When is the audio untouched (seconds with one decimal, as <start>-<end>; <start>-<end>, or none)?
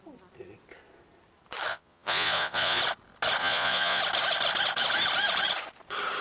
0.0-1.7; 2.8-3.4; 4.0-6.2